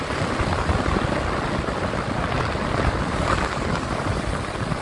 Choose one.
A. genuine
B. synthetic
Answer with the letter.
A